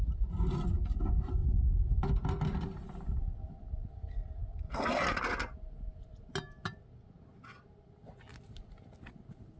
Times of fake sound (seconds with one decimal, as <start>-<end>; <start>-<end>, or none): none